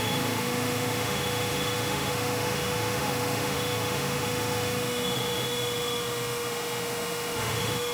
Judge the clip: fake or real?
fake